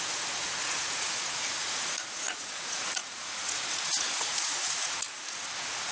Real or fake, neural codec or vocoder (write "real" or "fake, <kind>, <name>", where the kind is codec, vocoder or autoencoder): fake, vocoder, Vocos